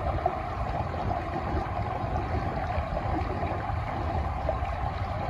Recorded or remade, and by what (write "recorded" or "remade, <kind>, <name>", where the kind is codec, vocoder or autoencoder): remade, vocoder, BigVGAN v2